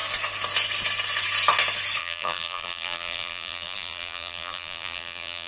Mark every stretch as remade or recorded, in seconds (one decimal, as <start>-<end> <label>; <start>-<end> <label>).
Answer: 0.0-2.0 recorded; 2.0-5.5 remade